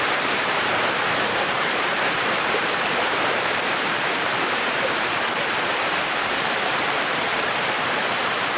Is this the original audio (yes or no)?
no